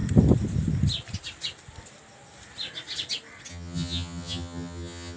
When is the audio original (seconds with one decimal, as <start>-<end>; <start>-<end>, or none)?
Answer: 0.0-3.5